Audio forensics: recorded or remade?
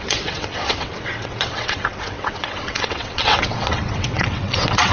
remade